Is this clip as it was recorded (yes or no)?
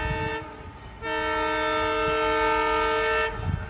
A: yes